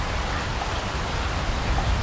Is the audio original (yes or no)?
yes